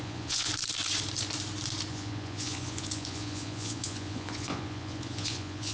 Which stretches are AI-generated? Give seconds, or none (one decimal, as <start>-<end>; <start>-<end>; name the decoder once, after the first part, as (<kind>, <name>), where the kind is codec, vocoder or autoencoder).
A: 0.0-0.5 (vocoder, Vocos); 1.9-5.7